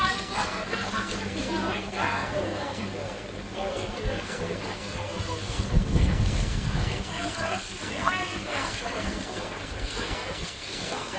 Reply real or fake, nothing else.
fake